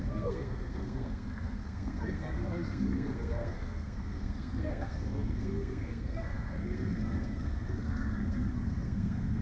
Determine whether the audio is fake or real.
fake